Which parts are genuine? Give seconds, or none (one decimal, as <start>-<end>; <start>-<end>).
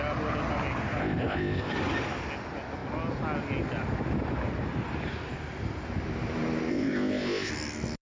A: 0.0-1.0; 1.7-6.7; 7.5-8.0